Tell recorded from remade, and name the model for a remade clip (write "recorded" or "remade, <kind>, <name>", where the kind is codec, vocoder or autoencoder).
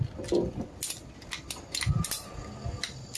recorded